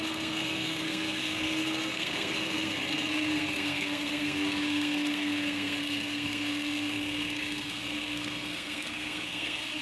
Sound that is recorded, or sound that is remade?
remade